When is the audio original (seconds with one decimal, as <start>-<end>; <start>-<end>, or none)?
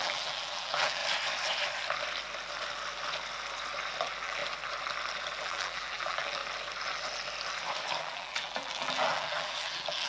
1.0-4.0; 4.4-5.4; 6.4-8.0